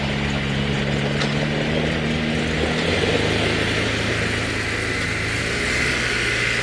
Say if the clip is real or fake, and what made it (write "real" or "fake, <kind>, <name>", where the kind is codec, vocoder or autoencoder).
real